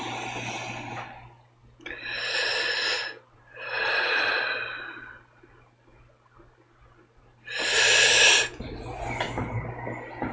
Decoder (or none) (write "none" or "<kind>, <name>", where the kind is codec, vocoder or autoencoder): none